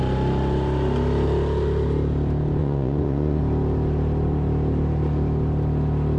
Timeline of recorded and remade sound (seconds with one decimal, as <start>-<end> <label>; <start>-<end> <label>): 0.0-2.6 recorded; 2.6-3.4 remade; 3.4-6.2 recorded